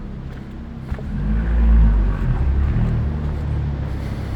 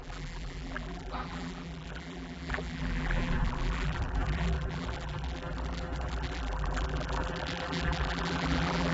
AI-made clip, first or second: second